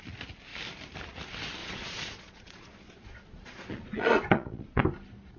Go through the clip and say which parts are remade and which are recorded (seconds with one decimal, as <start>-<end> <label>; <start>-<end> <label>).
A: 0.0-1.6 recorded; 1.6-4.8 remade; 4.8-5.4 recorded